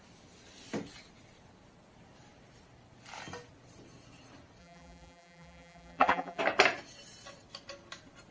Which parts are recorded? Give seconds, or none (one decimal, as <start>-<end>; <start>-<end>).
0.0-4.6; 6.4-8.3